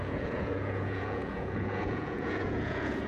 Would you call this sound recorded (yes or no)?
no